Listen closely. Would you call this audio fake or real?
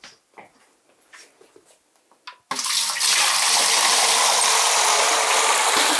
real